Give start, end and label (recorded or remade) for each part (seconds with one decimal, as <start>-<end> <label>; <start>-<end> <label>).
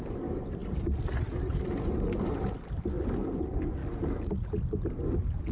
0.0-5.5 recorded